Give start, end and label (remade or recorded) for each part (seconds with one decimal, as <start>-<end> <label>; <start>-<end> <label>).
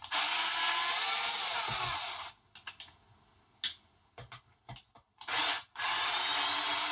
0.0-6.9 recorded